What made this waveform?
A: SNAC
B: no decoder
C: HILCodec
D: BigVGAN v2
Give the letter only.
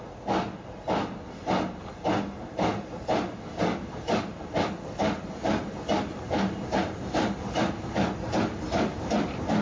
B